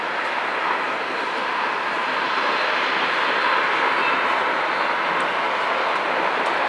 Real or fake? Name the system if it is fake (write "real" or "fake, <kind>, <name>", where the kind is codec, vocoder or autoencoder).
real